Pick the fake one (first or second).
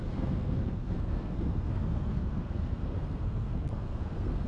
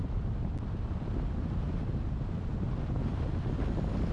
first